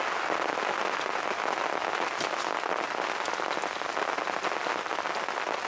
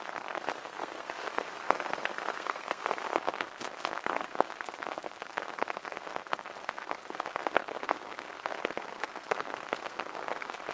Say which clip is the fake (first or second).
second